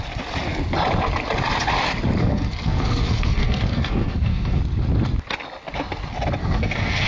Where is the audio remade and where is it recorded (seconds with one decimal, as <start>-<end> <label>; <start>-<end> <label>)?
0.0-2.2 recorded; 2.2-4.6 remade; 4.6-6.4 recorded; 6.4-7.1 remade